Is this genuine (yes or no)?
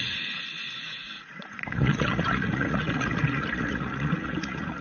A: no